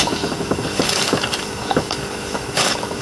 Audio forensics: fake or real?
fake